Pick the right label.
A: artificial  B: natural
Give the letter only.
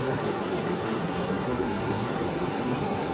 A